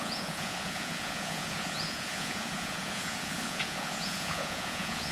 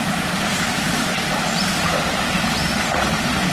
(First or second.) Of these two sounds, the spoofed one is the first